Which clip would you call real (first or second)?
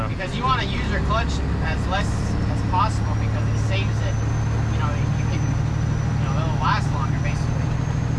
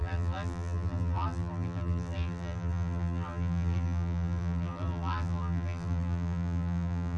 first